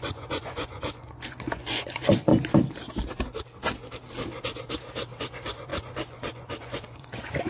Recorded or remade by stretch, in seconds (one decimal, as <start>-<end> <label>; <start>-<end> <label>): 0.0-2.3 remade; 2.3-5.2 recorded; 5.2-7.5 remade